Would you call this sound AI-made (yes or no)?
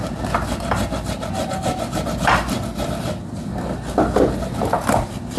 no